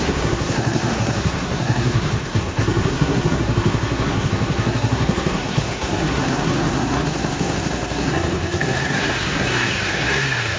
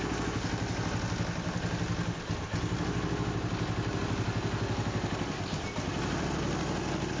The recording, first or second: second